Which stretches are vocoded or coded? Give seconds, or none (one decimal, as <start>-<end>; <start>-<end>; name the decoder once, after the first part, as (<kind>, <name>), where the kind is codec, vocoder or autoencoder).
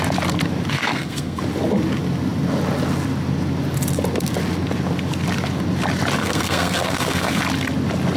0.9-1.4 (codec, SNAC); 6.2-7.4